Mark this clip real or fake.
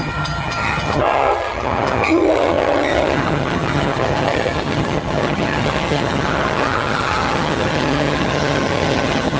fake